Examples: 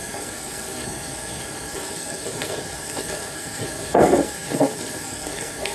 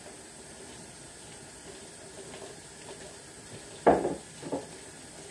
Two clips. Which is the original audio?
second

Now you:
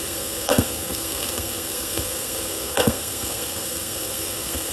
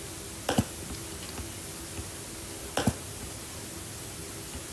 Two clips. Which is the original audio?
second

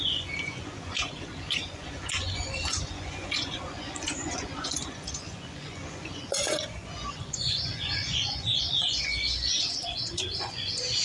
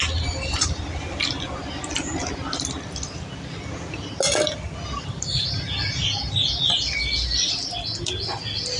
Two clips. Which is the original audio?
second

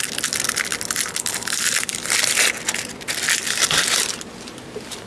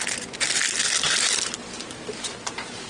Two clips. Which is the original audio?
second